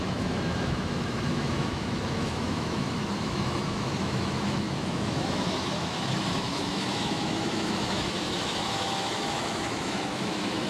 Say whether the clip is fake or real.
fake